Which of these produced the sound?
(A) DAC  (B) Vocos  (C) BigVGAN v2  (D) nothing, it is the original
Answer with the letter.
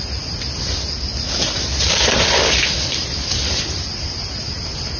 D